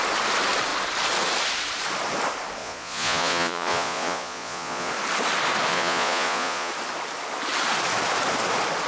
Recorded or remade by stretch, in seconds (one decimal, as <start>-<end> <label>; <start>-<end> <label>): 0.0-2.6 recorded; 2.6-4.9 remade; 4.9-5.7 recorded; 5.7-6.7 remade; 6.7-8.9 recorded